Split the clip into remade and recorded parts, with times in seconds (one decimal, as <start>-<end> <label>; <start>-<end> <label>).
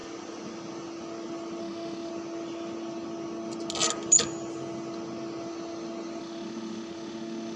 0.0-1.6 recorded; 1.6-2.1 remade; 2.1-6.2 recorded; 6.2-7.6 remade